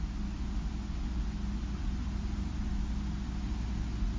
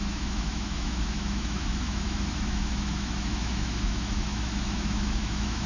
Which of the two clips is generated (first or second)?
second